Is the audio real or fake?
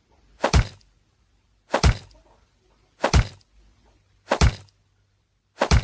real